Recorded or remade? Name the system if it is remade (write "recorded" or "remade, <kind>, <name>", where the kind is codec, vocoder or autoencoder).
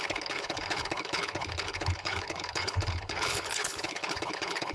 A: remade, codec, HILCodec